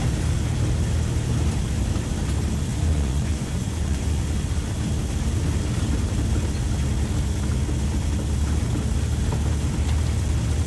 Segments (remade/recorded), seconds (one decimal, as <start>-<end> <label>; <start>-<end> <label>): 0.0-2.7 recorded; 2.7-4.2 remade; 4.2-10.7 recorded